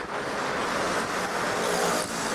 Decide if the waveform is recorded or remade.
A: recorded